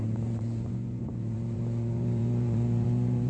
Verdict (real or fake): fake